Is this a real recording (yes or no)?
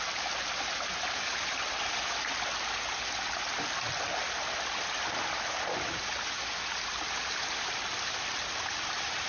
yes